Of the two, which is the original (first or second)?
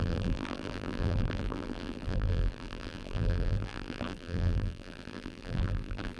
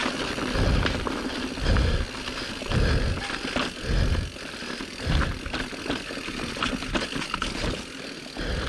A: second